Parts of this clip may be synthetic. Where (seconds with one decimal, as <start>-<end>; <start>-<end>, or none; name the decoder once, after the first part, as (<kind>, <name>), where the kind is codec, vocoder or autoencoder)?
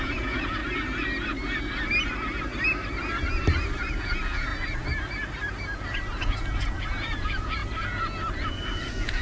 0.0-0.6 (vocoder, Vocos); 3.8-4.5; 6.2-7.6; 8.4-9.2